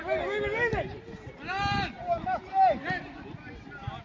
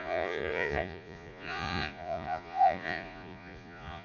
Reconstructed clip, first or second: second